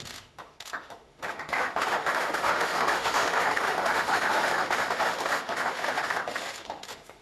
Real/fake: fake